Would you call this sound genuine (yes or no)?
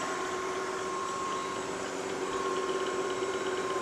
no